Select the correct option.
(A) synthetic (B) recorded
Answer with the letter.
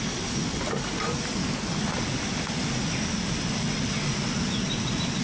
B